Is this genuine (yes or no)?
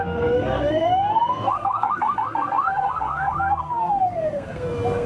no